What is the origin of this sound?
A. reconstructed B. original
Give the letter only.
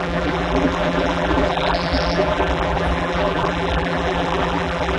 A